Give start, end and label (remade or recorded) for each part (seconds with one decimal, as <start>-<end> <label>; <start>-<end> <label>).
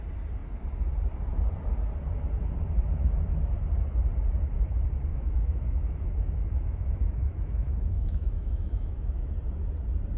0.0-5.1 recorded; 5.1-9.3 remade; 9.3-10.2 recorded